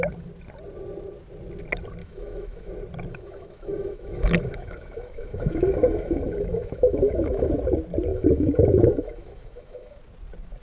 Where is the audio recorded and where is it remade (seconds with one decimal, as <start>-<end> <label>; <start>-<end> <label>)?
0.0-2.0 recorded; 2.0-2.7 remade; 2.7-3.1 recorded; 3.1-7.5 remade; 7.5-8.1 recorded; 8.1-10.0 remade; 10.0-10.6 recorded